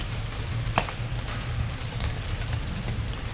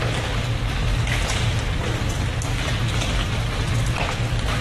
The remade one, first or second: first